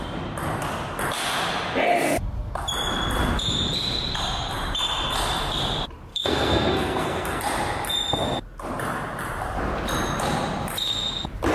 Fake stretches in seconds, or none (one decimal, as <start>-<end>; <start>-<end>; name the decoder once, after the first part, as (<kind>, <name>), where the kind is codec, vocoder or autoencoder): 6.1-7.4 (codec, SNAC)